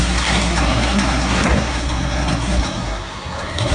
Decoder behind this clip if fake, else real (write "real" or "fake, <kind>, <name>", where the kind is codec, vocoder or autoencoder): fake, codec, SNAC